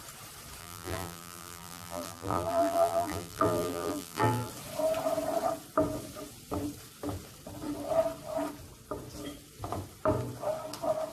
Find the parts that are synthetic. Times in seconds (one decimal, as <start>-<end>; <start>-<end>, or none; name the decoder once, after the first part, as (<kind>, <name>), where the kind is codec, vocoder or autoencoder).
0.6-4.5 (vocoder, BigVGAN v2)